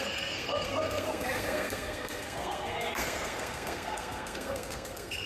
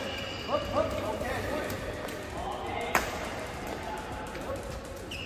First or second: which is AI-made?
first